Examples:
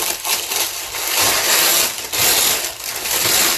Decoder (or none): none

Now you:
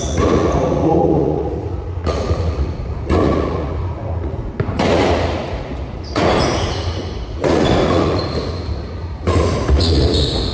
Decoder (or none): vocoder, Vocos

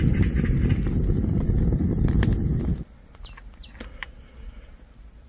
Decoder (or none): none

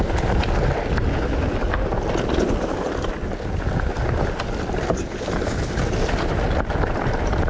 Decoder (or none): none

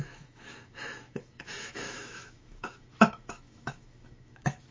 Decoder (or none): autoencoder, DAC-VAE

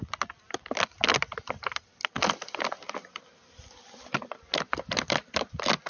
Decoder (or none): none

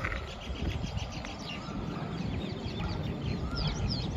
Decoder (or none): none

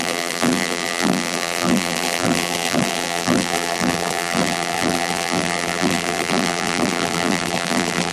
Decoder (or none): vocoder, BigVGAN v2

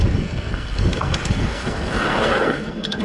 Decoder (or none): codec, SNAC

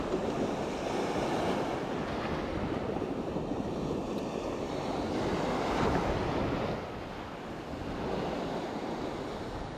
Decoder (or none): none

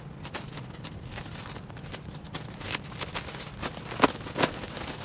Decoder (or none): none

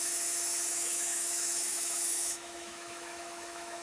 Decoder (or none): autoencoder, DAC-VAE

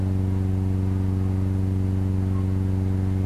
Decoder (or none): none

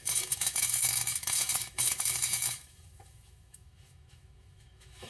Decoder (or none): autoencoder, DAC-VAE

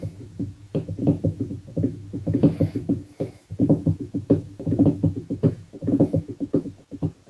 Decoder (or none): autoencoder, DAC-VAE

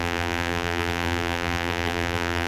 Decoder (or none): vocoder, BigVGAN v2